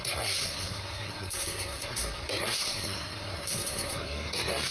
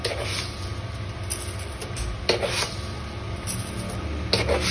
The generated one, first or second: first